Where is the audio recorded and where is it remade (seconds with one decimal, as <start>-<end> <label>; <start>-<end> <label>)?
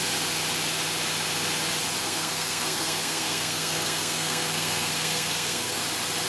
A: 0.0-2.0 recorded; 2.0-5.8 remade; 5.8-6.3 recorded